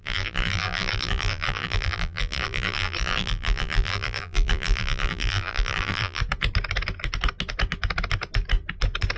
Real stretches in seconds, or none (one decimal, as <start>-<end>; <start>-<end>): 6.2-9.2